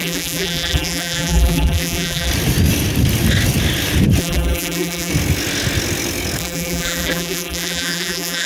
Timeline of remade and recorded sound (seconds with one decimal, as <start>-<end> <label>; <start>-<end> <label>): 0.0-2.3 remade; 2.3-4.2 recorded; 4.2-5.1 remade; 5.1-6.4 recorded; 6.4-8.5 remade